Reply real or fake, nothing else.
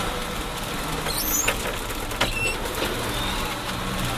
real